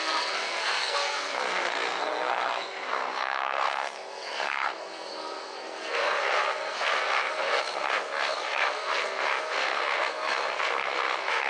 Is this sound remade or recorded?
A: remade